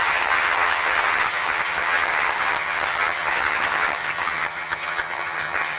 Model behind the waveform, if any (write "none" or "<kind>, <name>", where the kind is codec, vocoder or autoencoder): vocoder, HiFi-GAN